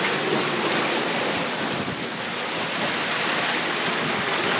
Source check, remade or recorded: recorded